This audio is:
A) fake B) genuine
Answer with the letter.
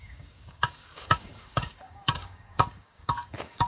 A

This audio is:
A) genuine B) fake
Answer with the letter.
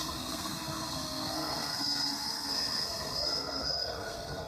B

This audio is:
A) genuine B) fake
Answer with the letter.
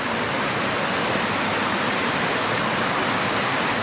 A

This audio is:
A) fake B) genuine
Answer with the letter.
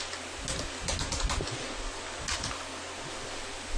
B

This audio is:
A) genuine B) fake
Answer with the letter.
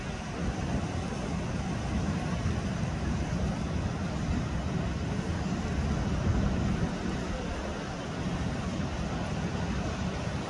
A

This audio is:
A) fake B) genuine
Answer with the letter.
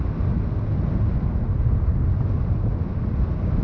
B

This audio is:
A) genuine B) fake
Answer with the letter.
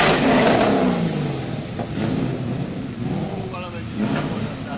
A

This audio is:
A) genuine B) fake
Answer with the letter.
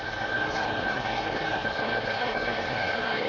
B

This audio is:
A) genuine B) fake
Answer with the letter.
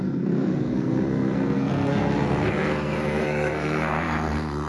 B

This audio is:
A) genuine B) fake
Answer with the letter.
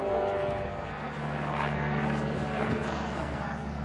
B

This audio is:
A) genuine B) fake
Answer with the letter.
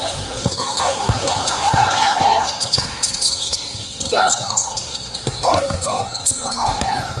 B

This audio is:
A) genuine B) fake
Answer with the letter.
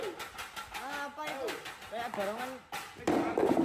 A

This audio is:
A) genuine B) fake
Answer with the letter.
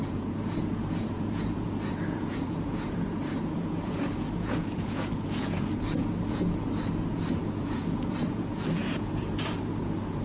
B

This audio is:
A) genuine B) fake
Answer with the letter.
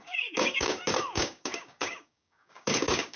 B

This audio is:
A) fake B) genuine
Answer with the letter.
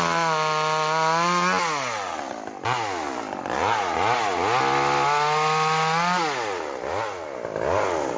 B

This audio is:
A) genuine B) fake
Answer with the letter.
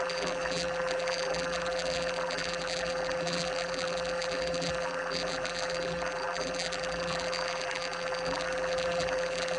B